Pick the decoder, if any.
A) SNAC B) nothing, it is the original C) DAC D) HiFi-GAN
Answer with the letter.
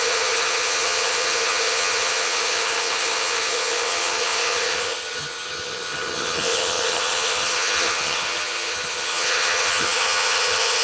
D